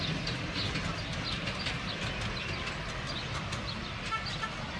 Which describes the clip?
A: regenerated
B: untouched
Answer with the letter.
B